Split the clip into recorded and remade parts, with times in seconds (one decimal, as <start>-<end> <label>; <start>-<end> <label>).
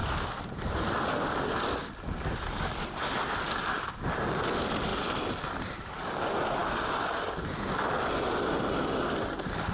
0.0-9.7 recorded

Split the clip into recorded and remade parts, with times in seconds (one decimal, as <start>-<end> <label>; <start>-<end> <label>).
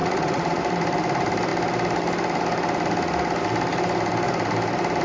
0.0-0.6 remade; 0.6-5.0 recorded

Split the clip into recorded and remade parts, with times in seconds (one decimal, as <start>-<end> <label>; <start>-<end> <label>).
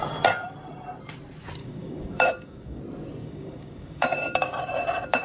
0.0-1.6 recorded; 1.6-2.8 remade; 2.8-3.2 recorded; 3.2-4.6 remade; 4.6-5.2 recorded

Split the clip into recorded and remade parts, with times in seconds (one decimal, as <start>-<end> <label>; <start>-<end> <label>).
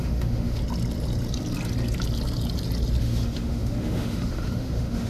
0.0-0.6 remade; 0.6-3.0 recorded; 3.0-5.1 remade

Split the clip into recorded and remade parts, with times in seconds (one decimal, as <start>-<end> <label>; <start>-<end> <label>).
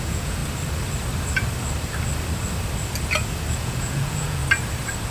0.0-0.4 remade; 0.4-3.5 recorded; 3.5-4.4 remade; 4.4-5.1 recorded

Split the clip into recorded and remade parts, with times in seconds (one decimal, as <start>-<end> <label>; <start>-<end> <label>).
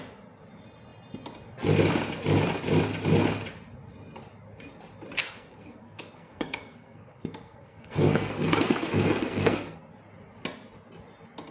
0.0-5.2 recorded; 5.2-9.9 remade; 9.9-11.5 recorded